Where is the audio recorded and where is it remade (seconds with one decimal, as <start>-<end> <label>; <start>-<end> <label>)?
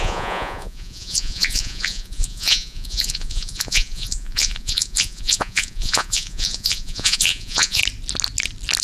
0.0-7.8 remade; 7.8-8.8 recorded